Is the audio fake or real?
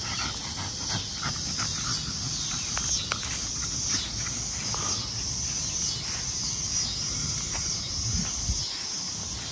real